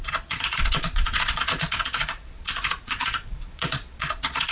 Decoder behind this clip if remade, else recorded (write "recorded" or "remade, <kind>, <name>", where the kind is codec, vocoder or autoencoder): remade, vocoder, Vocos